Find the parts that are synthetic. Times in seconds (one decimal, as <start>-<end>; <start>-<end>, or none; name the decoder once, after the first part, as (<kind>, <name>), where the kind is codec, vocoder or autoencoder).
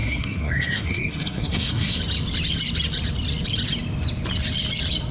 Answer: 0.0-2.0 (codec, SNAC)